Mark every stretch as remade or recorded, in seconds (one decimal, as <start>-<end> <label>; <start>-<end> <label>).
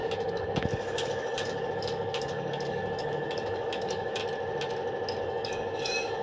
0.0-4.2 remade; 4.2-5.2 recorded; 5.2-6.2 remade